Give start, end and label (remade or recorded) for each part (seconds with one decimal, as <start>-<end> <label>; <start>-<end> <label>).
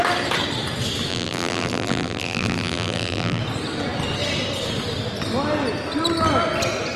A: 0.0-1.1 recorded; 1.1-3.4 remade; 3.4-7.0 recorded